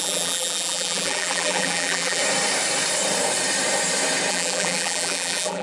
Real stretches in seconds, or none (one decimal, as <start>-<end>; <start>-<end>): 2.2-4.3